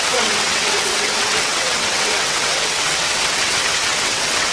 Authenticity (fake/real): fake